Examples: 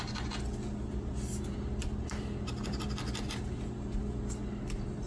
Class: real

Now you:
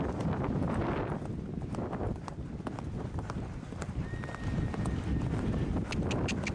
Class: real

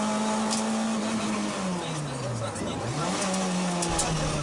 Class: real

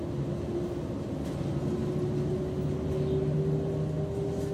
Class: real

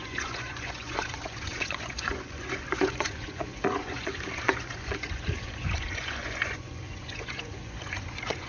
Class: fake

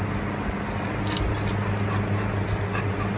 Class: real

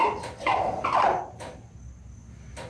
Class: real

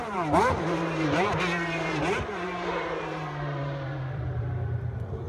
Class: fake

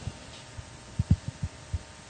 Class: real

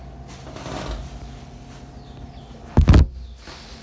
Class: real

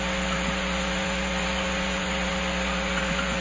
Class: fake